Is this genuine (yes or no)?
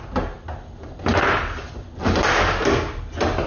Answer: yes